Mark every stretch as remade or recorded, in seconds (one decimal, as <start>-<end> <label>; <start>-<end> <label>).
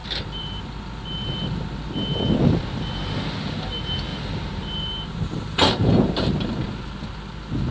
0.0-0.6 remade; 0.6-4.1 recorded; 4.1-6.6 remade; 6.6-7.7 recorded